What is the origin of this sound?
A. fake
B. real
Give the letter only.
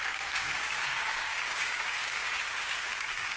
A